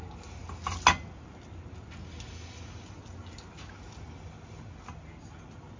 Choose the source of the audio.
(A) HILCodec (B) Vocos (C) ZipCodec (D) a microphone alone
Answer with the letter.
D